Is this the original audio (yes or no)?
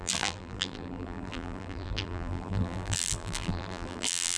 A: no